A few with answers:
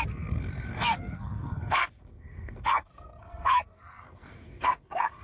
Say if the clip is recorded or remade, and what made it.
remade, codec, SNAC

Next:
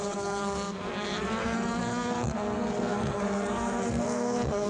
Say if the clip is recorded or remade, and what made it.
remade, codec, SNAC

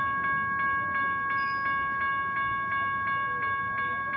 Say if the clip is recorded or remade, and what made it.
recorded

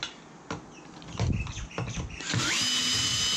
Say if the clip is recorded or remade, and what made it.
recorded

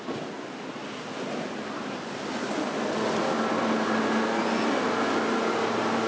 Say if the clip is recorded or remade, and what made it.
recorded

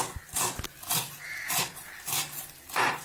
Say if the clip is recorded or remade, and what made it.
recorded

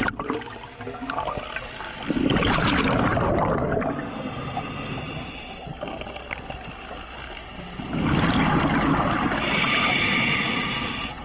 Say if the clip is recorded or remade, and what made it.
recorded